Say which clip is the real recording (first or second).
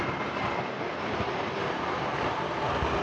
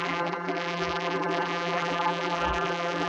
first